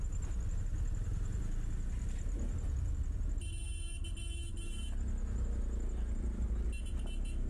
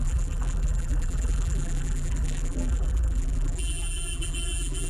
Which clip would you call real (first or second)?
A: first